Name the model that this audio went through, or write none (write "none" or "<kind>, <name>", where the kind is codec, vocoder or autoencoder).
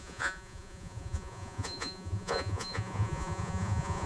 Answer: vocoder, Vocos